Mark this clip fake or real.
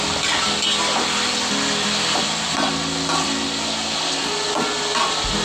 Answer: real